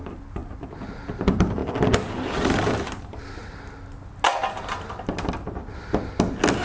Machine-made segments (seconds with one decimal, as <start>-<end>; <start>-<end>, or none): none